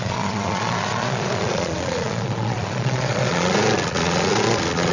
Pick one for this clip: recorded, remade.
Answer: remade